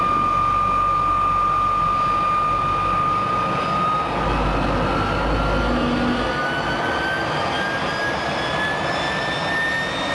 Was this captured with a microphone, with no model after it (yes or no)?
yes